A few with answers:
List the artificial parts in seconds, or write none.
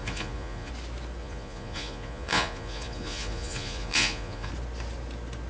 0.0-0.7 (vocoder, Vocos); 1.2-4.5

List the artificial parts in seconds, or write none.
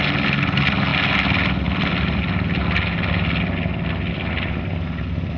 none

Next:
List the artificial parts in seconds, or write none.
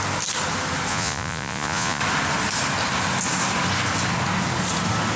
0.9-2.0 (vocoder, Vocos)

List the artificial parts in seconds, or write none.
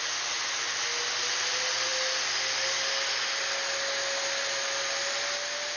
none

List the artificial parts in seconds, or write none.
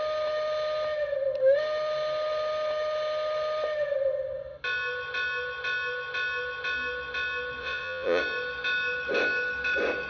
7.6-8.2 (vocoder, Vocos)